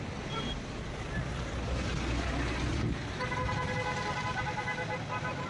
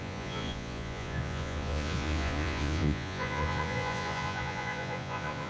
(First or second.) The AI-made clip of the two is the second